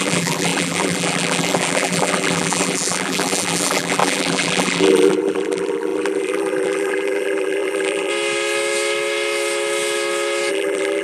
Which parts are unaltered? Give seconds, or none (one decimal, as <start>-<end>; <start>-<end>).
8.1-10.5